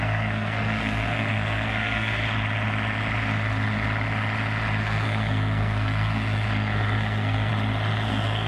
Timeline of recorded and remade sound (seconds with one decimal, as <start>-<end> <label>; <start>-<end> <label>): 0.0-2.2 remade; 2.2-4.8 recorded; 4.8-7.5 remade; 7.5-8.1 recorded; 8.1-8.5 remade